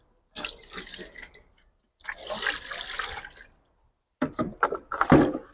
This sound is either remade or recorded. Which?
recorded